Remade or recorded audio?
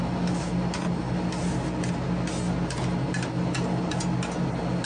recorded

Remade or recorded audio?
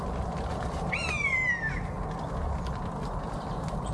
recorded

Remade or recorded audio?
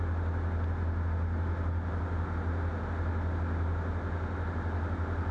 recorded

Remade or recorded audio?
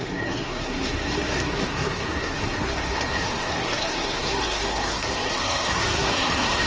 remade